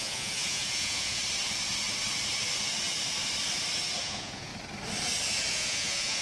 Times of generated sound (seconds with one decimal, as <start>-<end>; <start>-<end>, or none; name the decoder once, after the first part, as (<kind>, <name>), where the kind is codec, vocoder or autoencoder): 0.0-1.2 (vocoder, Vocos); 4.0-4.5; 5.5-6.2